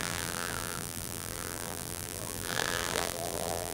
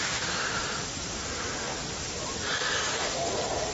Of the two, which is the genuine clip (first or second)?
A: second